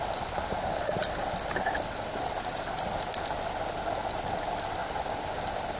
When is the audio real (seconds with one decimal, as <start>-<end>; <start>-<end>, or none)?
0.0-1.0; 2.4-4.8